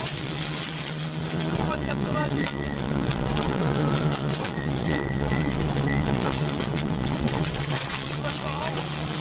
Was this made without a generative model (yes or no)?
no